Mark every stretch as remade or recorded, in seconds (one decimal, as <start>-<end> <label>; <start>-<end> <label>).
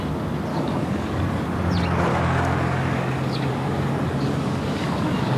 0.0-0.5 recorded; 0.5-1.4 remade; 1.4-2.1 recorded; 2.1-5.4 remade